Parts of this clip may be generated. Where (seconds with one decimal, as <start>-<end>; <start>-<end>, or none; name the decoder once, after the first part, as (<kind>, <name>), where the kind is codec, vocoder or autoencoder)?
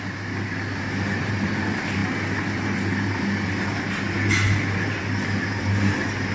none